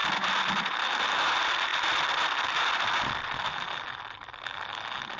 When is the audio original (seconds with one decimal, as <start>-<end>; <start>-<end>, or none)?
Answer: 0.0-5.2